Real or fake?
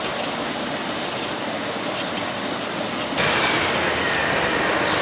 real